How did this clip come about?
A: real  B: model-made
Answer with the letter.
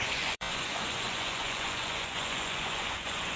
B